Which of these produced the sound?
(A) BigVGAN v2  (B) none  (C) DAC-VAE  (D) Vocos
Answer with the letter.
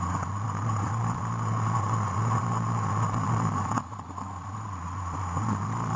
D